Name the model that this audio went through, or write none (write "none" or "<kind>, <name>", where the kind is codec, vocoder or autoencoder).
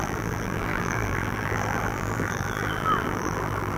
vocoder, BigVGAN v2